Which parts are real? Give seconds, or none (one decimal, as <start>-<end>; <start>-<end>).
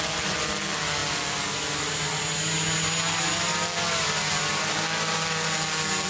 0.0-6.1